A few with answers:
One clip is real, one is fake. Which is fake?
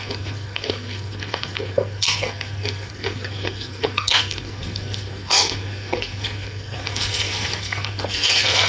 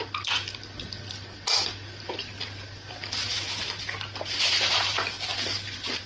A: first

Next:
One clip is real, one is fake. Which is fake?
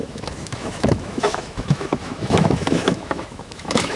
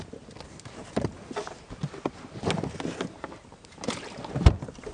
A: first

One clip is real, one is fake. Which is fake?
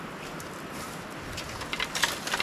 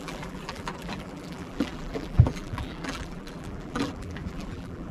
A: second